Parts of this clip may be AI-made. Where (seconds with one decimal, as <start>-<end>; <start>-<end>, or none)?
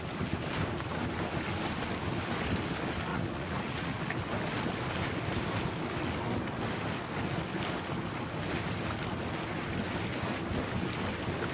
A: 3.1-4.0